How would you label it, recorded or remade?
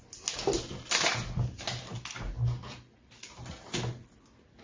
recorded